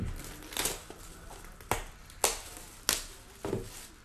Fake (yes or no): no